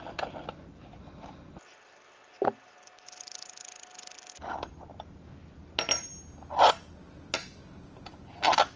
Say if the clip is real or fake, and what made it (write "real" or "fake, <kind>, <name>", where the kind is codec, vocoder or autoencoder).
real